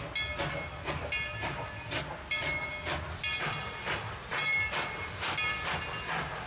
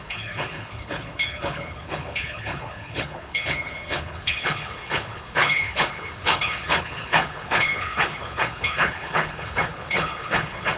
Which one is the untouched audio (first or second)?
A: first